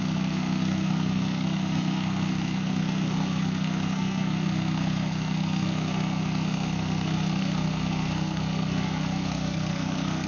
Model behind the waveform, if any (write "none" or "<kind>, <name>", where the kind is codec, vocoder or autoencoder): codec, SNAC